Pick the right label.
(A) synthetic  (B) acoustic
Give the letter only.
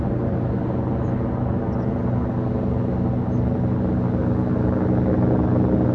B